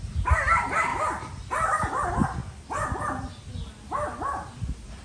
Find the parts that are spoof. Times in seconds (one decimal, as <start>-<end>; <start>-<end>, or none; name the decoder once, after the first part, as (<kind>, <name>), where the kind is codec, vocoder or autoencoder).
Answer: none